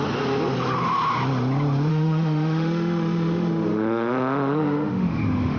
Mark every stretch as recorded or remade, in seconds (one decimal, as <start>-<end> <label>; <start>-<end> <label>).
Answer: 0.0-1.9 recorded; 1.9-5.6 remade